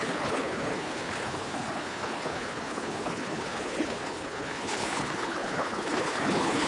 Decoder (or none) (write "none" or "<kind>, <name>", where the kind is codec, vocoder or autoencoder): codec, HILCodec